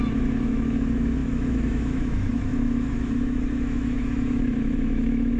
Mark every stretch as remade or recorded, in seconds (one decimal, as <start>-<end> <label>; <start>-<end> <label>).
0.0-5.4 remade